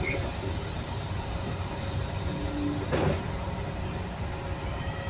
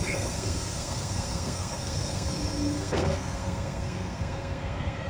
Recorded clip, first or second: first